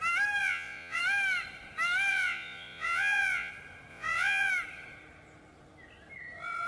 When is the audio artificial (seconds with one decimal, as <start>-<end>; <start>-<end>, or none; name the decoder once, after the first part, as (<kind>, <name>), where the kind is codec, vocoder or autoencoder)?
0.4-1.0 (vocoder, Vocos); 2.1-3.5; 3.9-4.5